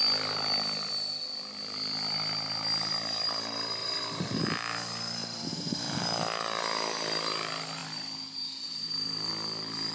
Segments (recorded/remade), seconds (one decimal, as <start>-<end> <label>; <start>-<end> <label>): 0.0-3.8 recorded; 3.8-4.4 remade; 4.4-5.2 recorded; 5.2-6.6 remade; 6.6-7.8 recorded; 7.8-9.3 remade; 9.3-9.9 recorded